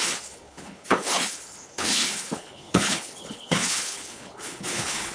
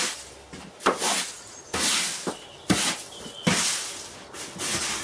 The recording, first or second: second